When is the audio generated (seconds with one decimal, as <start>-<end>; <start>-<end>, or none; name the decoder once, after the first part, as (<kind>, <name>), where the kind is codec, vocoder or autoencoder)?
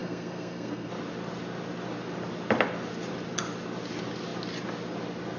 0.0-0.9 (codec, SNAC)